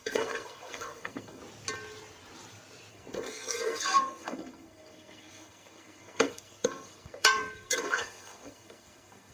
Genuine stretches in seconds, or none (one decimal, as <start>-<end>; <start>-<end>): 1.4-2.9